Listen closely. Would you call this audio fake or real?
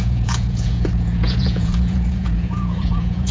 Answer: fake